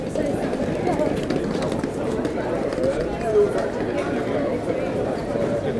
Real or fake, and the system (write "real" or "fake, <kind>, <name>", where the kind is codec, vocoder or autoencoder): real